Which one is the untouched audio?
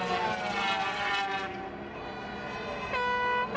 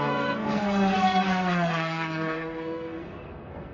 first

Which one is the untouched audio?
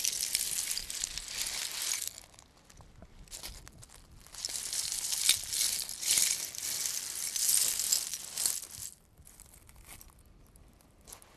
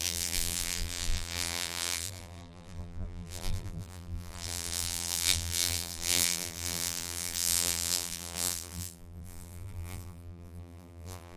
first